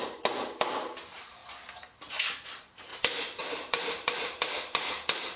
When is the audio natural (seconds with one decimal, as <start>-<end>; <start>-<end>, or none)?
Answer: 0.0-0.8; 1.4-2.1